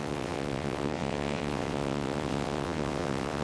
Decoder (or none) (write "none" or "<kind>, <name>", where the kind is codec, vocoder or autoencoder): vocoder, WaveNeXt